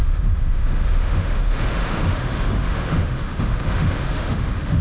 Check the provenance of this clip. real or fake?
fake